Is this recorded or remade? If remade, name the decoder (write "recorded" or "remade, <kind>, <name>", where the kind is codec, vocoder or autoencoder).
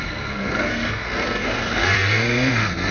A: remade, codec, SNAC